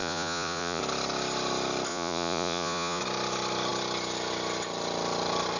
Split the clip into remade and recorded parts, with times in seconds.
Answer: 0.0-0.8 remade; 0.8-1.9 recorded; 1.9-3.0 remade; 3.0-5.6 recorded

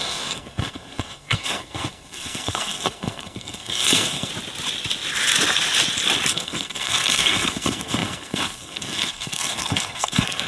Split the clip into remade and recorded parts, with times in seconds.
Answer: 0.0-4.3 remade; 4.3-6.3 recorded; 6.3-10.5 remade

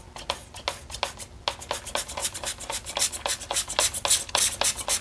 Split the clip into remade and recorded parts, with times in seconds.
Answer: 0.0-5.0 recorded

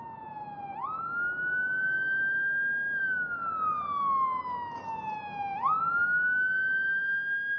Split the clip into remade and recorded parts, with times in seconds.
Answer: 0.0-7.6 recorded